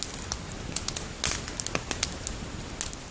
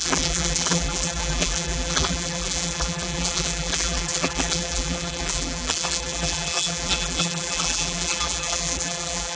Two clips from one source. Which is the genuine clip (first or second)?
first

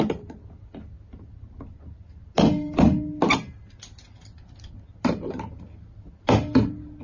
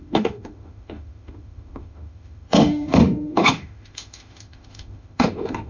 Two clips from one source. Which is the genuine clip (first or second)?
first